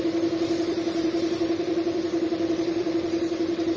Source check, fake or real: fake